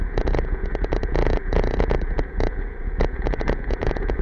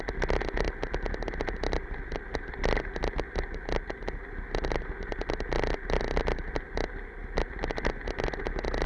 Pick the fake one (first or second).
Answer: first